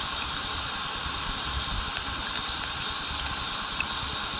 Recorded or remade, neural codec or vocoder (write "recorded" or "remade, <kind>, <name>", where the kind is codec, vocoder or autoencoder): recorded